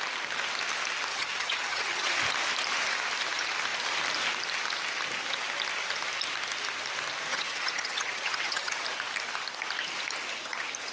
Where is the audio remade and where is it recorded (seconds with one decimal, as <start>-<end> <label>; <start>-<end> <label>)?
0.0-1.1 recorded; 1.1-2.2 remade; 2.2-7.3 recorded; 7.3-8.8 remade; 8.8-10.9 recorded